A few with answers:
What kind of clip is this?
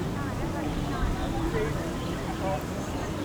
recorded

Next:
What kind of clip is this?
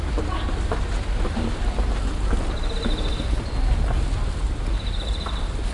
recorded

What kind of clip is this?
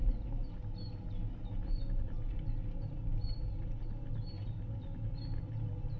recorded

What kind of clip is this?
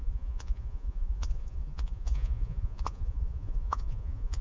remade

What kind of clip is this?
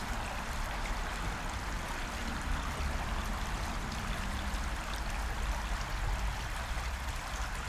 recorded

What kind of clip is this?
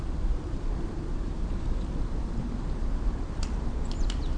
remade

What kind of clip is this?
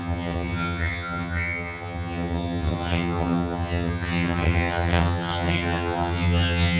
remade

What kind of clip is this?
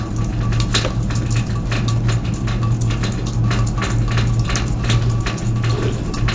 recorded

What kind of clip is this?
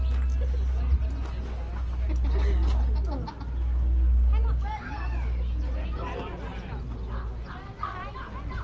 recorded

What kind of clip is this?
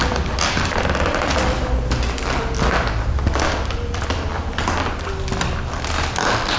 recorded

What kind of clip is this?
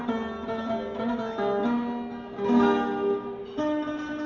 recorded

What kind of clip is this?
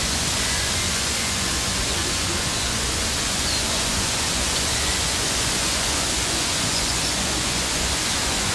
remade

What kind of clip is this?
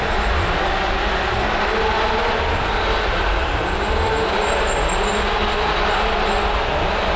recorded